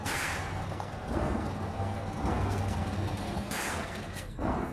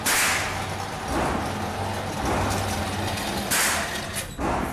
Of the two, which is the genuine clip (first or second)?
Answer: second